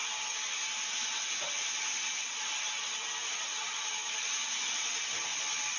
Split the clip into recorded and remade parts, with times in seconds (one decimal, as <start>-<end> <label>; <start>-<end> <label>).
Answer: 0.0-5.8 recorded